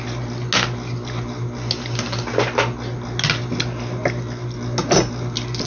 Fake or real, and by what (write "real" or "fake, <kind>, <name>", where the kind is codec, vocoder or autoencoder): real